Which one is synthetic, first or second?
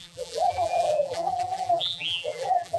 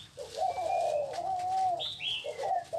first